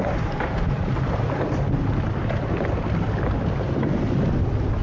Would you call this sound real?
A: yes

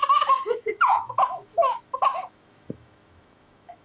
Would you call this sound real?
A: no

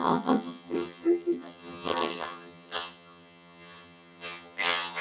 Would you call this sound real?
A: no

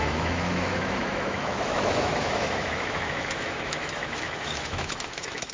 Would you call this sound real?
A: no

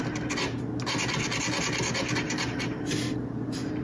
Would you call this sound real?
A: yes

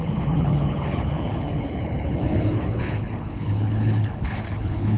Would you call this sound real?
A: no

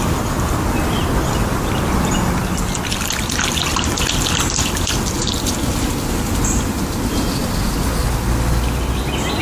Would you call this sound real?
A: yes